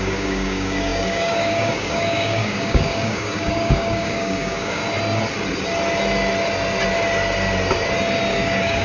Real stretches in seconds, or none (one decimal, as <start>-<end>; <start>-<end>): 4.8-8.3